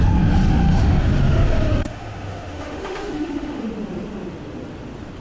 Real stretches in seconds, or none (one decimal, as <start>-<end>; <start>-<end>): 0.0-0.6; 3.7-5.2